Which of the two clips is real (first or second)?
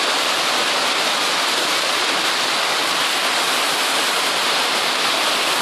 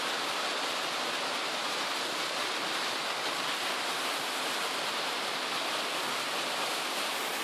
second